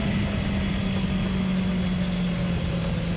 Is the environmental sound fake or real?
real